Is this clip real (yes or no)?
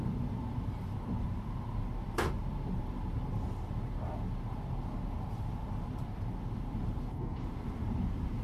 no